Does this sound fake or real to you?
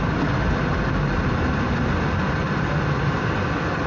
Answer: real